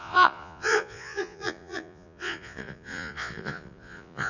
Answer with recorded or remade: remade